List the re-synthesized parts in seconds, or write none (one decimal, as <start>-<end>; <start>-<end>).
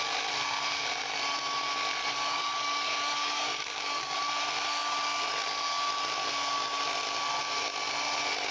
2.0-4.2